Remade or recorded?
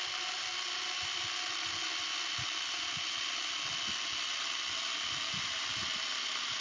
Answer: recorded